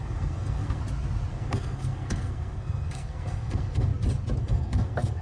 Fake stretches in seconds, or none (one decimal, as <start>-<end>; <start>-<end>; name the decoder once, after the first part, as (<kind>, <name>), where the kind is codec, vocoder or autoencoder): 0.0-0.8 (codec, SNAC); 1.3-3.9; 4.4-5.2